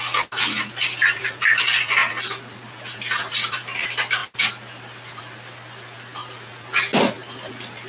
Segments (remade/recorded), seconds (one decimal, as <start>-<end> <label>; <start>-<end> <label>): 0.0-7.9 recorded